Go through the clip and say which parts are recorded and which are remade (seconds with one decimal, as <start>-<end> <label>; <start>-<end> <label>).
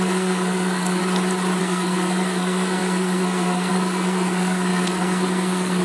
0.0-1.0 remade; 1.0-1.6 recorded; 1.6-5.8 remade